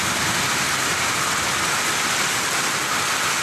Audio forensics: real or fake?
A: real